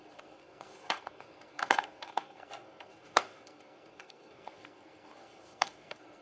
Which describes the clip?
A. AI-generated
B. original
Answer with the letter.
A